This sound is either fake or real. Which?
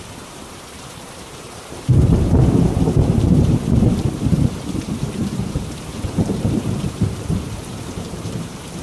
fake